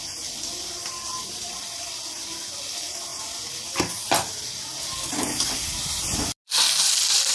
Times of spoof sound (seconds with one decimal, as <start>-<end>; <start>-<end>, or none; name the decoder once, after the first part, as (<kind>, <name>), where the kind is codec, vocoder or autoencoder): none